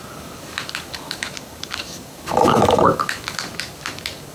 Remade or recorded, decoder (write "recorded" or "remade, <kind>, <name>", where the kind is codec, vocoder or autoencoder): remade, codec, DAC